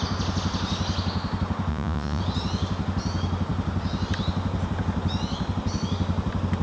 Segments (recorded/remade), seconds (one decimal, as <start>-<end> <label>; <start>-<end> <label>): 0.0-1.7 recorded; 1.7-2.2 remade; 2.2-6.6 recorded